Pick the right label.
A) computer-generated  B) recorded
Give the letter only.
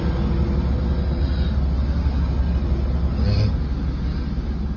B